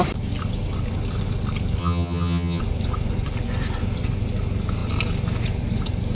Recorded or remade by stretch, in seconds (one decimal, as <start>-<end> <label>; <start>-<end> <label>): 0.0-1.8 recorded; 1.8-2.6 remade; 2.6-6.1 recorded